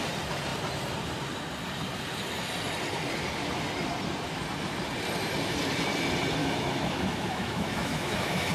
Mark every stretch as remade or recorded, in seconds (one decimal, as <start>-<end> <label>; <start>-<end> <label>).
0.0-6.4 recorded; 6.4-8.5 remade